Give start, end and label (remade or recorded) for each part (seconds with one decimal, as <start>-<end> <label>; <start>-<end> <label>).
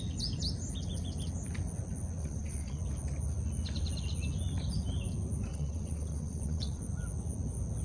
0.0-2.2 recorded; 2.2-2.8 remade; 2.8-5.5 recorded; 5.5-6.8 remade; 6.8-7.8 recorded